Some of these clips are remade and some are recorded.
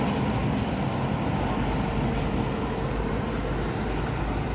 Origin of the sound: recorded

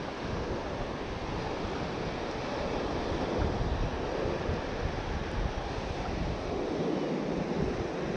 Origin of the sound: recorded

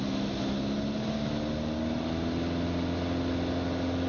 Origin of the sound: recorded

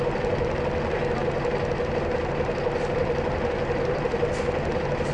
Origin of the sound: recorded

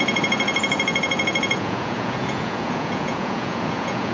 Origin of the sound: remade